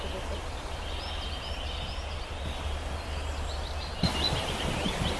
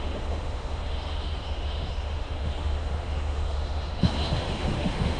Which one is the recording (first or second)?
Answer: first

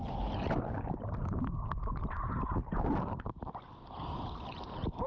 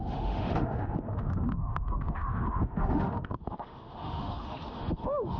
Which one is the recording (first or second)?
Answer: first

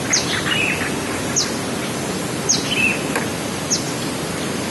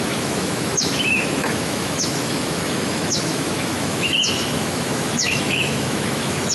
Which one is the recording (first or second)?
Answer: first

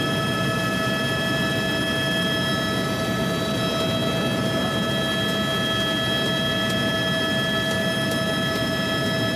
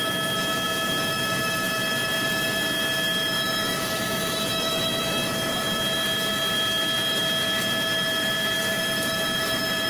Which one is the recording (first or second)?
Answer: first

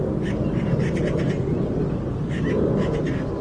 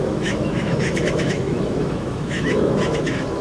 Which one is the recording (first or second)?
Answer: first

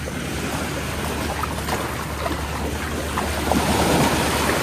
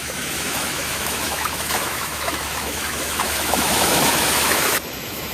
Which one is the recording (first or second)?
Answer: first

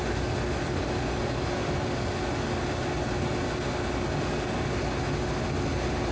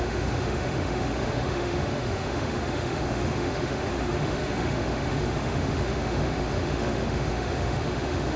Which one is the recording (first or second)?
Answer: first